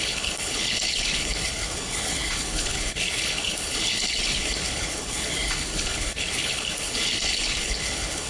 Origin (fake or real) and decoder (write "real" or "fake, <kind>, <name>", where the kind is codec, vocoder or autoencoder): fake, codec, HILCodec